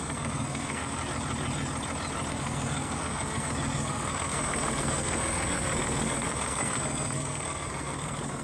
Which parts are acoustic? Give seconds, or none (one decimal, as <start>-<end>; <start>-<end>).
1.0-2.3